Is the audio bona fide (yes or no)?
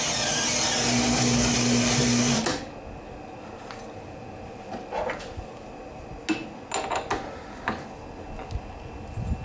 yes